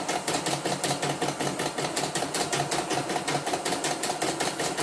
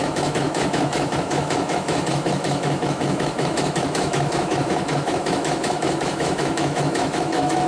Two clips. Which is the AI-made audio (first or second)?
second